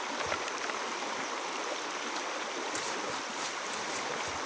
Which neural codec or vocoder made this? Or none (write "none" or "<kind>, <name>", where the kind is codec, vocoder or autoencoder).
vocoder, BigVGAN v2